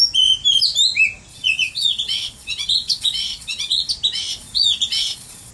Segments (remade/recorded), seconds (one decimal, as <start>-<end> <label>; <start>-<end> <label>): 0.0-1.3 recorded; 1.3-3.9 remade; 3.9-4.3 recorded; 4.3-5.5 remade